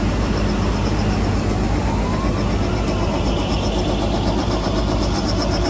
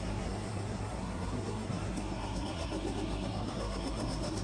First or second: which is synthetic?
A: second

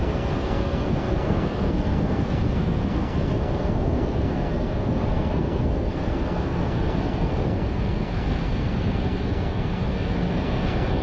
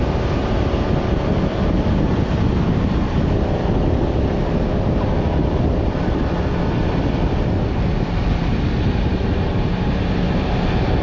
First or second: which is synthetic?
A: first